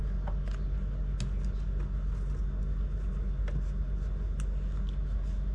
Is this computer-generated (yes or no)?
no